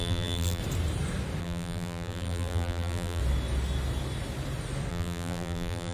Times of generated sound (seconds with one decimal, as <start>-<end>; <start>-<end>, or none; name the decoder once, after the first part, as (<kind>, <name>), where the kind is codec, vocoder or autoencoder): 0.0-0.6 (vocoder, BigVGAN v2); 1.4-3.2; 4.9-5.9